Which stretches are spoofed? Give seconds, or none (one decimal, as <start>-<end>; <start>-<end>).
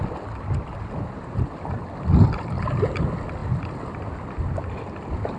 none